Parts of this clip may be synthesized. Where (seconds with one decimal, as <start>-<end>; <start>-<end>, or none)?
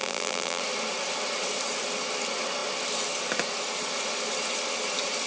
0.0-0.6